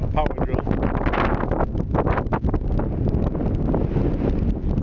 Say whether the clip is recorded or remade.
recorded